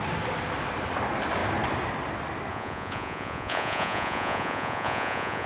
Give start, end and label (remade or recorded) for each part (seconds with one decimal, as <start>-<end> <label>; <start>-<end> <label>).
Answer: 0.0-2.5 recorded; 2.5-5.5 remade